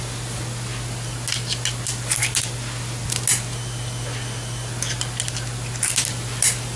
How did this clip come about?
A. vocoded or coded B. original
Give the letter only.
B